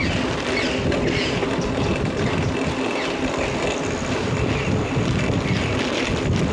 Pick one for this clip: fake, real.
real